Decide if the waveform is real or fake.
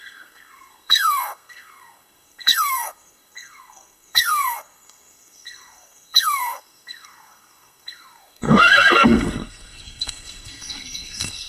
fake